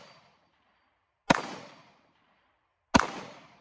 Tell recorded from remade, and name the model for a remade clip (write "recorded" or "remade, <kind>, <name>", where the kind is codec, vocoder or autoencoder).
recorded